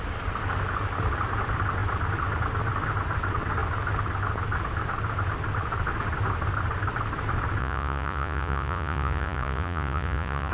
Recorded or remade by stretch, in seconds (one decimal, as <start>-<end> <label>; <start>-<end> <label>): 0.0-7.6 recorded; 7.6-10.5 remade